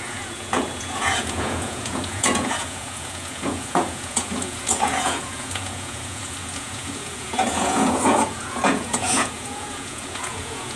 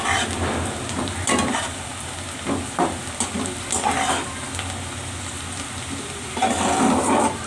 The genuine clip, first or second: second